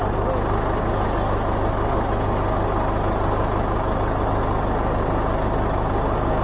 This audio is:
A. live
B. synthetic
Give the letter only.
A